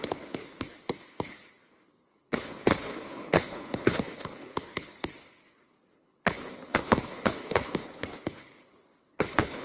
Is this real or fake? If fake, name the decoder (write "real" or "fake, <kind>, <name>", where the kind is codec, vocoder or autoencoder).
fake, codec, HILCodec